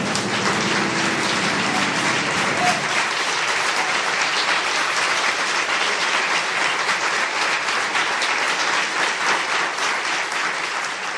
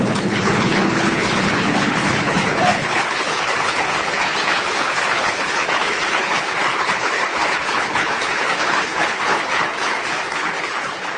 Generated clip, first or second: second